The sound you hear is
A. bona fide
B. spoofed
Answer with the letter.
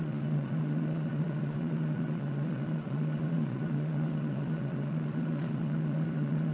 B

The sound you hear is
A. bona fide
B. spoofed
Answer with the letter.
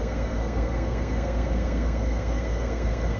B